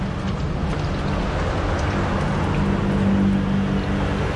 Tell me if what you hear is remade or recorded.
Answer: recorded